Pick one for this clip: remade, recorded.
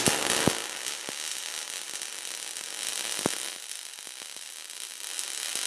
recorded